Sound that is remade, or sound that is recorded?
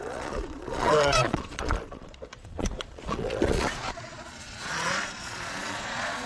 remade